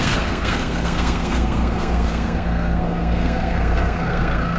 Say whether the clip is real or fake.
fake